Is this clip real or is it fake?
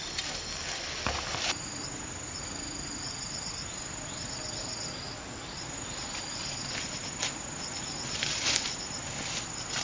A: real